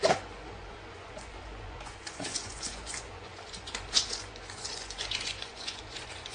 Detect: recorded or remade remade